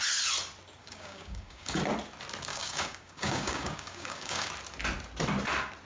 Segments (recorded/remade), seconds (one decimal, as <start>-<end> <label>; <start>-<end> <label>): 0.0-0.8 recorded; 0.8-1.8 remade; 1.8-2.5 recorded; 2.5-4.5 remade; 4.5-5.8 recorded